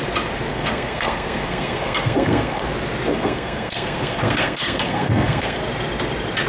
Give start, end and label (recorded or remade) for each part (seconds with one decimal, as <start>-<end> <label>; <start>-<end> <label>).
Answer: 0.0-0.5 recorded; 0.5-2.7 remade; 2.7-3.1 recorded; 3.1-5.6 remade; 5.6-6.5 recorded